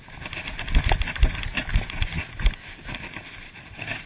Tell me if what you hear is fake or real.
real